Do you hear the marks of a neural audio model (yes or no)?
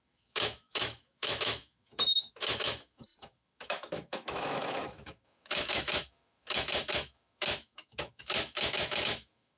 yes